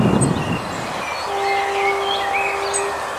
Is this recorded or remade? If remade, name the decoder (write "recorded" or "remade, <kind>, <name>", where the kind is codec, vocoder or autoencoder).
recorded